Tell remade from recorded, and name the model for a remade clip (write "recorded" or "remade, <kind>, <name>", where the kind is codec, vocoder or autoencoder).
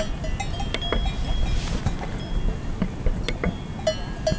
recorded